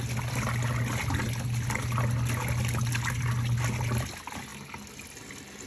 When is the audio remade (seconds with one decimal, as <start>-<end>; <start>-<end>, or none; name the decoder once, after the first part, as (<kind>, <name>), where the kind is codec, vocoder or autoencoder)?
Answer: none